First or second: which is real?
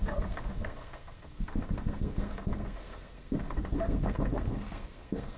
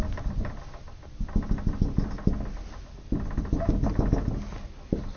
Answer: second